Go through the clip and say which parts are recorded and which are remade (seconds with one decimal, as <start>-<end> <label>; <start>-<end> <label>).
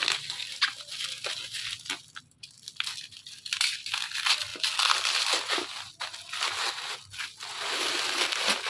0.0-8.7 recorded